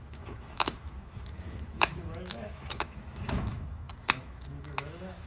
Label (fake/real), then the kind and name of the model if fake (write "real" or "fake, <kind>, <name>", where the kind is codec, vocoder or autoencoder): fake, autoencoder, DAC-VAE